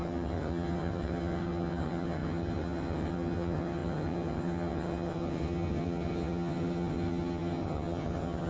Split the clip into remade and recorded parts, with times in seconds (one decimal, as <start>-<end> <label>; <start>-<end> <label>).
0.0-8.5 remade